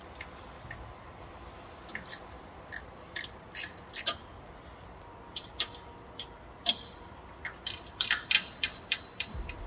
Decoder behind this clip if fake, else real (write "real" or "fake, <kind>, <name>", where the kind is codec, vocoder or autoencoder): fake, vocoder, BigVGAN v2